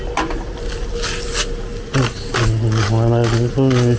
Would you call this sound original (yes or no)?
yes